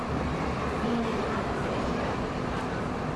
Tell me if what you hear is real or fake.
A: fake